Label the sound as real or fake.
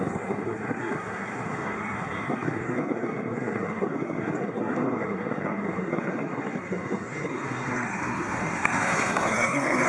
fake